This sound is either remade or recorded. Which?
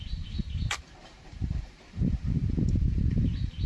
remade